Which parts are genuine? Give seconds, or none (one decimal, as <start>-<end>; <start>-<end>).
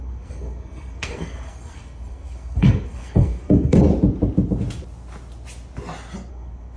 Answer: 3.9-6.3